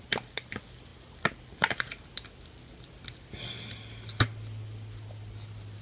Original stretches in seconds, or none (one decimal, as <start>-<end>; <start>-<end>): 0.0-5.8